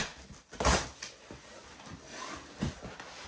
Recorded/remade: recorded